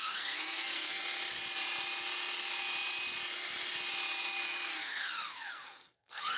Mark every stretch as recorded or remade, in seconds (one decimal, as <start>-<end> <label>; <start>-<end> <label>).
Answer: 0.0-1.0 remade; 1.0-4.8 recorded; 4.8-6.4 remade